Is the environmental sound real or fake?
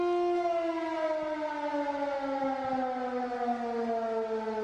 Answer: real